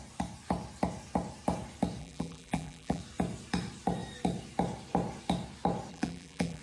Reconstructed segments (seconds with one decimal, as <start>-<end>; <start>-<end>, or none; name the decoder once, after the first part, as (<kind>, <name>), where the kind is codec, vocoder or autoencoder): 2.0-3.0 (vocoder, BigVGAN v2); 5.9-6.6